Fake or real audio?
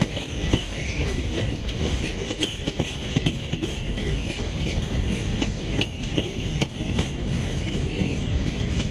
fake